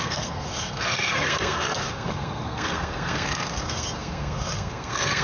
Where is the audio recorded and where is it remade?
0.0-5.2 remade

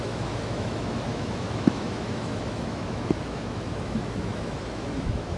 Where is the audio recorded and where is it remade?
0.0-5.4 remade

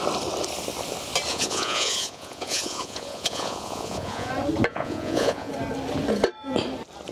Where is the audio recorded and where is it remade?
0.0-1.3 recorded; 1.3-4.3 remade; 4.3-4.7 recorded; 4.7-5.5 remade; 5.5-7.1 recorded

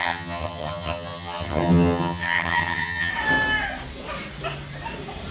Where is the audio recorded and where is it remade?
0.0-3.1 remade; 3.1-5.3 recorded

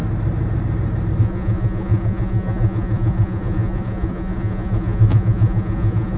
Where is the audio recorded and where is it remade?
0.0-1.2 recorded; 1.2-6.2 remade

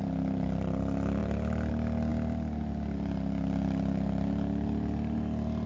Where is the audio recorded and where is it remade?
0.0-5.7 recorded

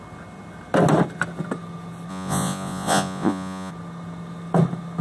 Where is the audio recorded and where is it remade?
0.0-2.1 recorded; 2.1-3.7 remade; 3.7-5.0 recorded